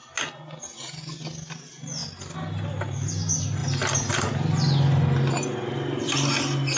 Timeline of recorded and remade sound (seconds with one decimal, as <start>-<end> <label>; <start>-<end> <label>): 0.0-3.6 recorded; 3.6-5.0 remade; 5.0-6.8 recorded